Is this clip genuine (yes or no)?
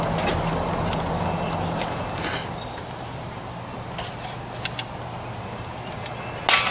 yes